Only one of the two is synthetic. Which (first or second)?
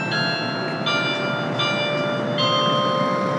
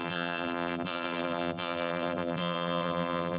second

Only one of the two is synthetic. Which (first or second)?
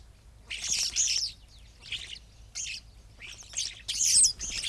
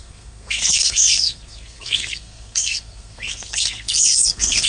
second